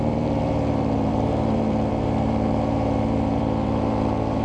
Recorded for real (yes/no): no